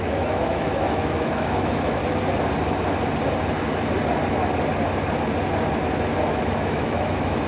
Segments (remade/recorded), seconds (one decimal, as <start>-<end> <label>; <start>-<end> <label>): 0.0-2.0 remade; 2.0-6.5 recorded; 6.5-7.5 remade